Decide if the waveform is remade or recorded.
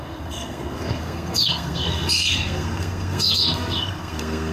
remade